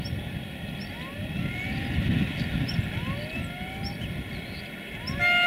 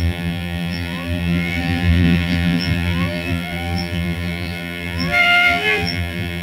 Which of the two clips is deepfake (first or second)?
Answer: second